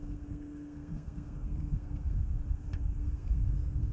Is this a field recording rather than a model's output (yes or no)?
no